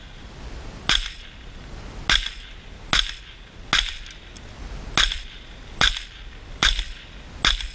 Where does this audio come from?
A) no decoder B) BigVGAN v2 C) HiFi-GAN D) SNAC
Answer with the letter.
A